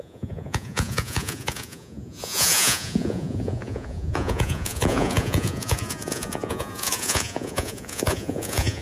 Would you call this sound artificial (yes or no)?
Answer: yes